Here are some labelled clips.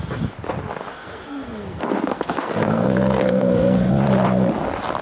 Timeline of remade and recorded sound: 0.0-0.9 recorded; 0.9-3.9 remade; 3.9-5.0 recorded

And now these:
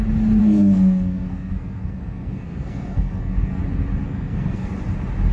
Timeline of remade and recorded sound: 0.0-0.4 recorded; 0.4-3.6 remade; 3.6-4.0 recorded; 4.0-4.7 remade; 4.7-5.3 recorded